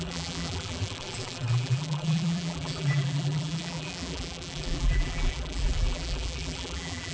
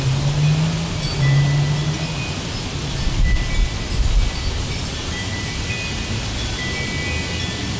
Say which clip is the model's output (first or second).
first